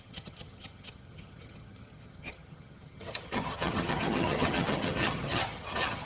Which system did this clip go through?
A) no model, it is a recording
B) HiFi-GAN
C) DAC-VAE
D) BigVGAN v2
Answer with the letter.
B